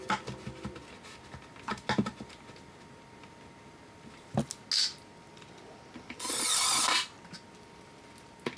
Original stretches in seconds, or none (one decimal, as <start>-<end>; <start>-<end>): 0.0-8.6

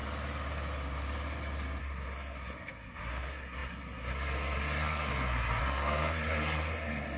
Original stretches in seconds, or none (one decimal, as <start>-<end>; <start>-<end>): 0.0-1.8

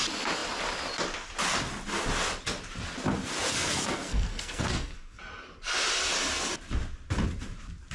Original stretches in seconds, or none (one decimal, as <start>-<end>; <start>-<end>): 0.0-3.5; 5.2-7.9

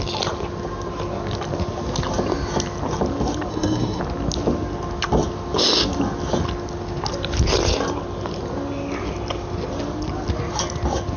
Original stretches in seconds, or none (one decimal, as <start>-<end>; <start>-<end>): 0.0-3.5; 4.0-11.2

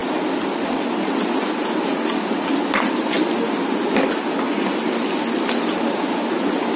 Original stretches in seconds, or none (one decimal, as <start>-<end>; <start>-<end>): 0.0-6.8

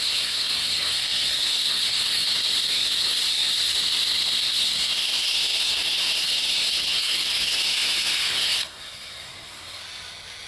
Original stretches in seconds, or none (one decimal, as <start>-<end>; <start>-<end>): 9.8-10.5

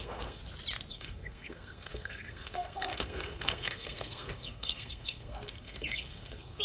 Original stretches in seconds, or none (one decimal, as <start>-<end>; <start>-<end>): 0.4-0.9

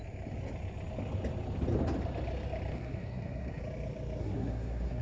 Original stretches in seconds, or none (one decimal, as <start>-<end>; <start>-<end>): 0.0-2.7; 3.6-4.2